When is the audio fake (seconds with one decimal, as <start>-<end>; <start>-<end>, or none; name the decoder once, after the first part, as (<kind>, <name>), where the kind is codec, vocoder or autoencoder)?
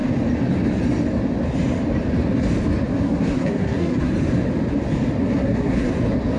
2.9-4.1 (codec, SNAC); 5.2-5.9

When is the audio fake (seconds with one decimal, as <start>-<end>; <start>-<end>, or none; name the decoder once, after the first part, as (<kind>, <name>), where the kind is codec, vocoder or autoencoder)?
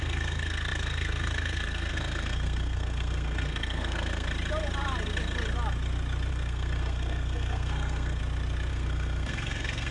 0.0-4.3 (codec, SNAC); 6.3-8.2; 8.7-9.9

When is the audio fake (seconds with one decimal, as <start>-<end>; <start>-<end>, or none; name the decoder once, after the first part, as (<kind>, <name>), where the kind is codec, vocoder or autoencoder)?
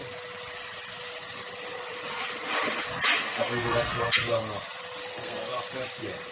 3.2-4.4 (codec, SNAC); 5.1-5.6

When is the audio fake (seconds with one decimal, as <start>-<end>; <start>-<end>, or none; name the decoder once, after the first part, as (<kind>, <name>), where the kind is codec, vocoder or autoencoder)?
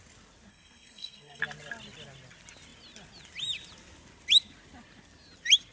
0.5-1.4 (codec, SNAC)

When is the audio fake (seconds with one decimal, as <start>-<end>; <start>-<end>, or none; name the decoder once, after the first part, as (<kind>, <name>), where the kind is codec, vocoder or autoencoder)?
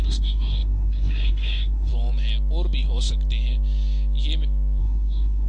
0.0-1.9 (codec, SNAC); 4.8-5.5